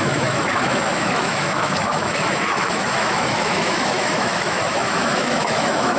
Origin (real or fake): fake